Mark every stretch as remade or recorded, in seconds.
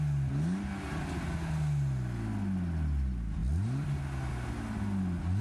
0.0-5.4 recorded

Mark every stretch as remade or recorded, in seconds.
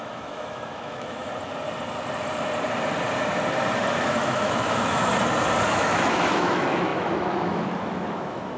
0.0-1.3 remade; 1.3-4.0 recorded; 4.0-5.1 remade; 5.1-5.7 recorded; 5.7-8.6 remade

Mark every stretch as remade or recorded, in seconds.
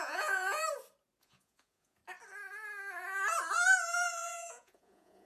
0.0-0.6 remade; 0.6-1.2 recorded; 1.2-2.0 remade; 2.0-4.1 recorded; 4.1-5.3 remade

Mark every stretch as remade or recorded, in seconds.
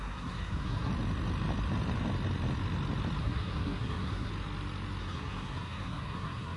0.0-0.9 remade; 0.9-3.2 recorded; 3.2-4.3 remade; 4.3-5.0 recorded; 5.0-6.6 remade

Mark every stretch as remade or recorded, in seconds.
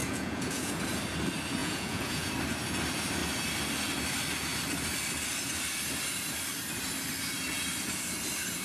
0.0-0.8 remade; 0.8-1.6 recorded; 1.6-2.3 remade; 2.3-8.6 recorded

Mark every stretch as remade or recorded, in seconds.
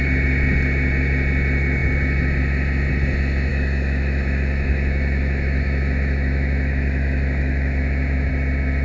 0.0-3.5 recorded; 3.5-8.3 remade; 8.3-8.8 recorded